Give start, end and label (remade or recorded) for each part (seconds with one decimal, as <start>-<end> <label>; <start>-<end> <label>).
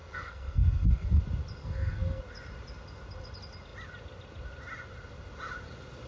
0.0-1.2 remade; 1.2-1.6 recorded; 1.6-2.2 remade; 2.2-6.1 recorded